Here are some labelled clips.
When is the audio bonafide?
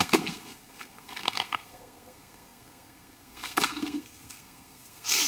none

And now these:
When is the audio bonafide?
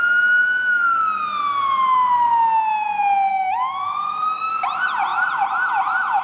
0.0-3.3; 4.5-6.2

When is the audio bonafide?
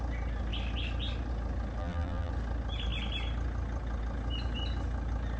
0.0-1.8; 2.3-5.4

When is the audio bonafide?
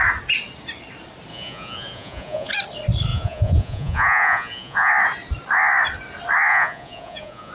0.0-1.3; 2.5-3.1; 4.9-6.5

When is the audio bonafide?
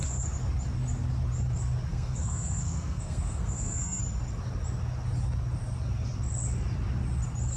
0.0-1.9; 4.0-7.6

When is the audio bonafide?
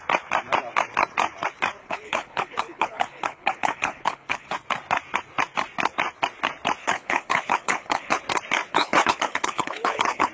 0.0-1.8; 4.5-6.8; 8.2-8.7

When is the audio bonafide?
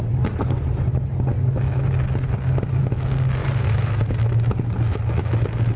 0.0-3.4; 3.9-5.8